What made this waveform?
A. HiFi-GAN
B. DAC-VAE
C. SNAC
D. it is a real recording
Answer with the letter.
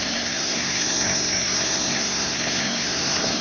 C